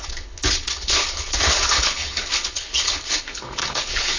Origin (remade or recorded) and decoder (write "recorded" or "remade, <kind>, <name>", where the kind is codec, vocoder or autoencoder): remade, codec, HILCodec